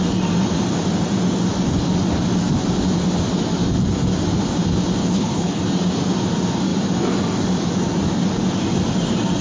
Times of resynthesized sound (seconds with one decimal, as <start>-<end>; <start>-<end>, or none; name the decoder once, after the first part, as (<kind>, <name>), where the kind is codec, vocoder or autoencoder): 5.0-5.6 (codec, HILCodec)